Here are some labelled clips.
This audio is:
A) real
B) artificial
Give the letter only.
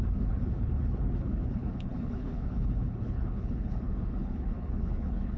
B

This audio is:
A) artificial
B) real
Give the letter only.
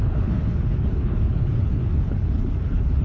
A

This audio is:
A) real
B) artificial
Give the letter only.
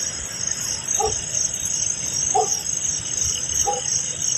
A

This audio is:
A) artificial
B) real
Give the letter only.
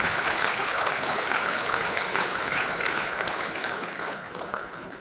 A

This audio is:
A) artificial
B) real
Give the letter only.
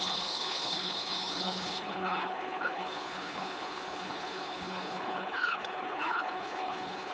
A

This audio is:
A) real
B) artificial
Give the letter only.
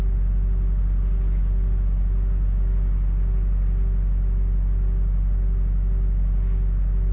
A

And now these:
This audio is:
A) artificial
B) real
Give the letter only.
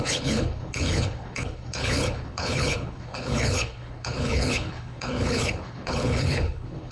A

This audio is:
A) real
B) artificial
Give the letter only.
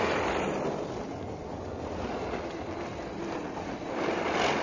A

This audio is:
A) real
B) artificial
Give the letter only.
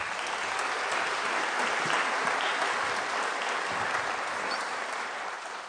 A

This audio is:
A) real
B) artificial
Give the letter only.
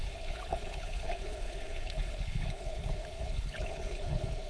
B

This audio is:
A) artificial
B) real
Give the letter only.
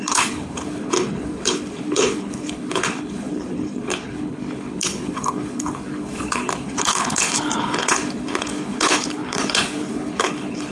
A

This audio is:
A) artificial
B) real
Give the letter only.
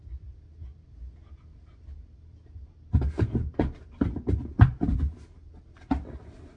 B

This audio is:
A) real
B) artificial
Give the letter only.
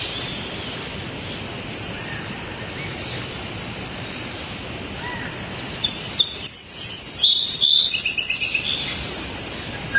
A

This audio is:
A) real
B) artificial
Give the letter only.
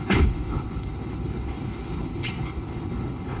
B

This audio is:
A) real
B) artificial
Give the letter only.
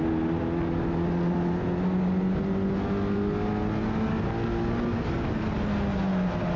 A